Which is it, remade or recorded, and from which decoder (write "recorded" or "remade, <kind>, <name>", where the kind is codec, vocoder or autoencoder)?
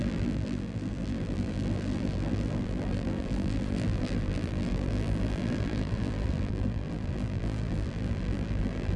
remade, vocoder, BigVGAN v2